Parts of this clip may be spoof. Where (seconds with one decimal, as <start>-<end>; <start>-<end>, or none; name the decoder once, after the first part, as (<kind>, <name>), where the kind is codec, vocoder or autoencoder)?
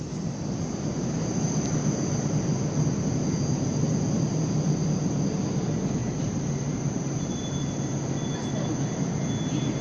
0.9-1.5 (vocoder, BigVGAN v2); 6.0-7.5